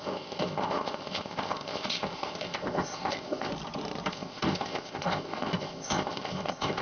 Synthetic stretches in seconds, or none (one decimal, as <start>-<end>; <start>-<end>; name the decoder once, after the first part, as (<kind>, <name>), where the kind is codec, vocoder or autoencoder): 0.0-3.5 (codec, ZipCodec); 4.1-6.8